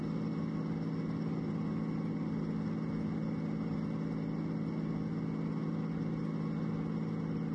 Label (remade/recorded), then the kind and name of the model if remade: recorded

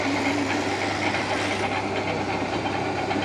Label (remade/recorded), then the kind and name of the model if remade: recorded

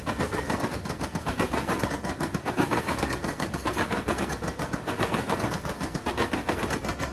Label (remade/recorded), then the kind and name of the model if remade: remade, codec, SNAC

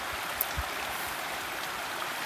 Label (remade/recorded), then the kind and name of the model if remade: recorded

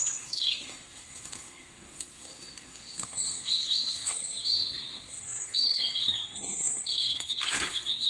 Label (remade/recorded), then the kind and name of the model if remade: remade, codec, SNAC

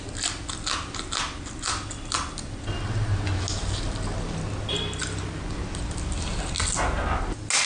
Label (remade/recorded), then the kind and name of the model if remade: recorded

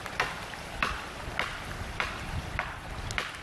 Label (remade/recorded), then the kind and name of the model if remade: recorded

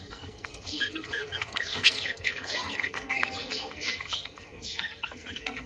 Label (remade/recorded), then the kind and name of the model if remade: remade, codec, SNAC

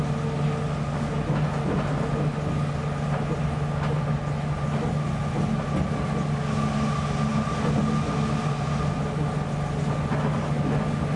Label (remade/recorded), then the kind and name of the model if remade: recorded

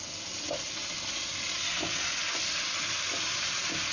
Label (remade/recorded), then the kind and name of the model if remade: recorded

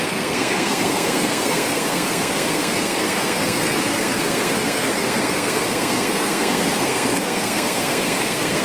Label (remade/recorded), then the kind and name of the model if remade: remade, codec, SNAC